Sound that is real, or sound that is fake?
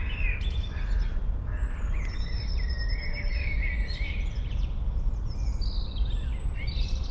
real